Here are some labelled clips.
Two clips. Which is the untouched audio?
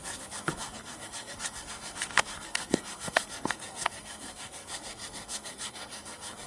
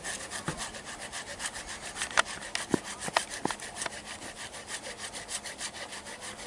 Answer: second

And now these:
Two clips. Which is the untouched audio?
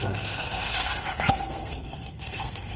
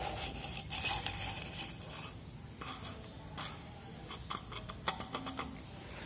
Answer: second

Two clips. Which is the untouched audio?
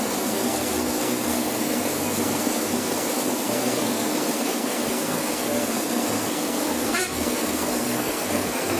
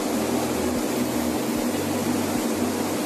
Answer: second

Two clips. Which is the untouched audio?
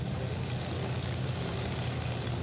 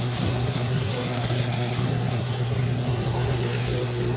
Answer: first